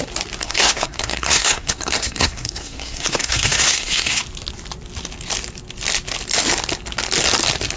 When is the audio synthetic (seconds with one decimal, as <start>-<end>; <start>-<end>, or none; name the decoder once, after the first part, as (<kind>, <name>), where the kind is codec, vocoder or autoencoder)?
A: 0.4-4.2 (codec, SNAC)